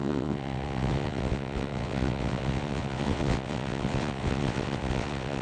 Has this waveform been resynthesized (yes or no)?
yes